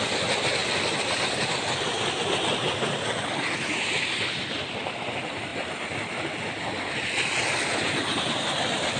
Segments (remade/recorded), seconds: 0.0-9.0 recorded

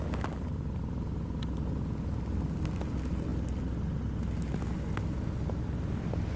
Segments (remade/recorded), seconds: 0.0-6.4 recorded

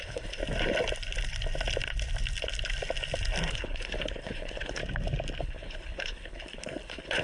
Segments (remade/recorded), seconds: 0.0-0.4 remade; 0.4-3.5 recorded; 3.5-4.8 remade; 4.8-5.4 recorded; 5.4-7.2 remade